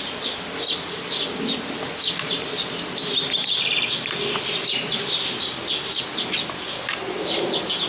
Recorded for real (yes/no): yes